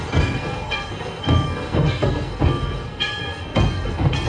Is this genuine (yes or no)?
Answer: no